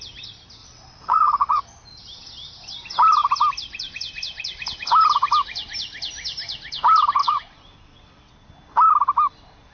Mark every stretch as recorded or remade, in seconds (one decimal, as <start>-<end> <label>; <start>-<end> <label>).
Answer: 0.0-0.6 recorded; 0.6-1.6 remade; 1.6-7.2 recorded; 7.2-8.3 remade; 8.3-9.7 recorded